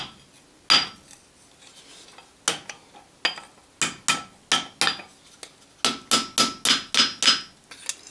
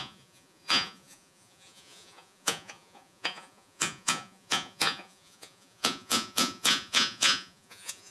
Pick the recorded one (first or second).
first